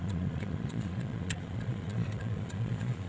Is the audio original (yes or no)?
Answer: no